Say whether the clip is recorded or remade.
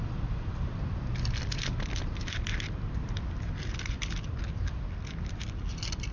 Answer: remade